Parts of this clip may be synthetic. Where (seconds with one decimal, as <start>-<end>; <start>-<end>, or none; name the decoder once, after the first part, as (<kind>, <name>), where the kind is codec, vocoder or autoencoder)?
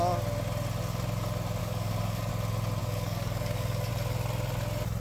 1.6-2.3 (codec, DAC); 2.8-3.9